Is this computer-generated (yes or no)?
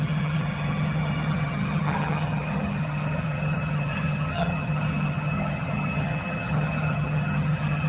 yes